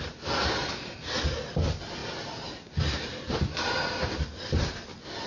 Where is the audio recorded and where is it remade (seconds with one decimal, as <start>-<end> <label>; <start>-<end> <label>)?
0.0-5.3 recorded